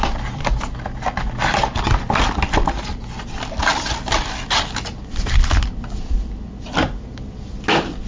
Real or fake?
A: real